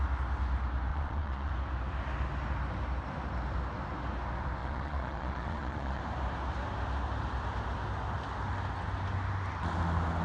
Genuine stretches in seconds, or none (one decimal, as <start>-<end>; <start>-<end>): 0.0-0.9; 1.5-4.6; 6.0-10.2